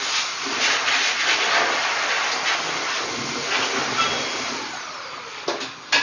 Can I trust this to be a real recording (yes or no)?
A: yes